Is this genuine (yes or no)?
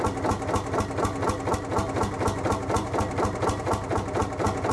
yes